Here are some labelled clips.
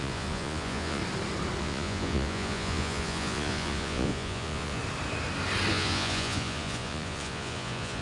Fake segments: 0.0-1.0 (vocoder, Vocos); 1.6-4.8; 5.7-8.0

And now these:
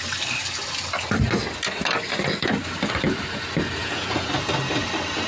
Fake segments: 3.8-4.3 (vocoder, Vocos)

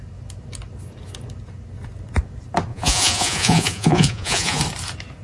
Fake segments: 2.7-4.6 (vocoder, Vocos)

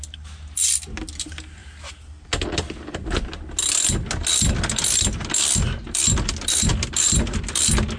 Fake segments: none

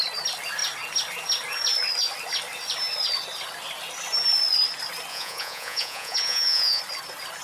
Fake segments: 5.1-6.8 (vocoder, Vocos)

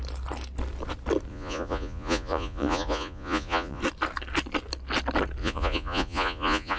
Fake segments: 1.3-3.8 (vocoder, Vocos); 5.4-6.8

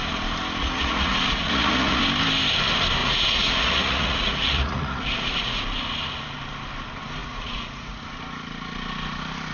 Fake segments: 0.6-2.0 (vocoder, Vocos); 3.0-5.6; 7.2-8.0

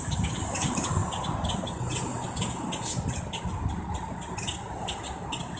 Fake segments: none